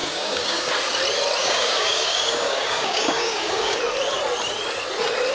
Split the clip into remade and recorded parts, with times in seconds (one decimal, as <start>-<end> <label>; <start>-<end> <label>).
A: 0.0-0.7 remade; 0.7-1.4 recorded; 1.4-3.8 remade; 3.8-5.3 recorded